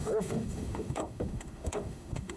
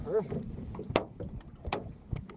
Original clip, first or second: second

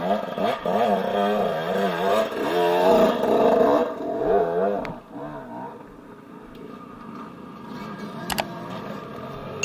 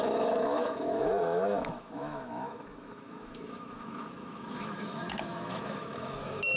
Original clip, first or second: first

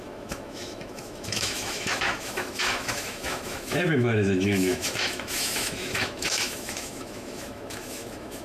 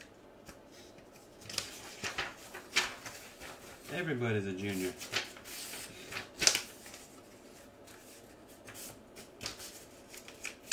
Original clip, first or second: second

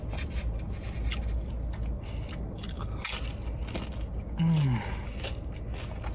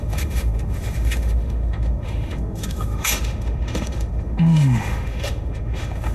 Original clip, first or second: first